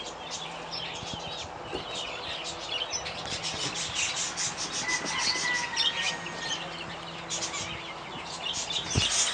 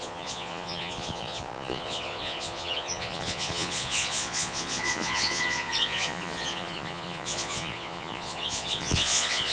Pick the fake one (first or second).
second